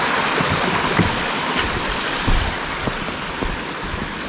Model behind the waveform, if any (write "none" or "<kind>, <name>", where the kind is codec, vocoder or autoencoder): none